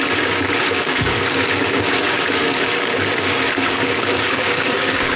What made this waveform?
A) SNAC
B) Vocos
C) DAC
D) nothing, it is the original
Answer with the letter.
C